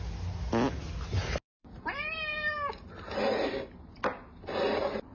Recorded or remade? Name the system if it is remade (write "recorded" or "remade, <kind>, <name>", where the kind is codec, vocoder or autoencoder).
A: recorded